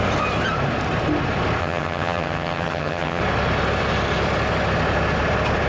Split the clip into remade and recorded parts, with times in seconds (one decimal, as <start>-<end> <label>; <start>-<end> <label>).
0.0-1.6 recorded; 1.6-3.2 remade; 3.2-5.7 recorded